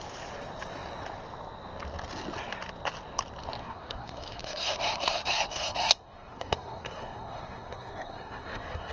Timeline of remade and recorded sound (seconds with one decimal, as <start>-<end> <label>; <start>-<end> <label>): 0.0-3.6 recorded; 3.6-8.9 remade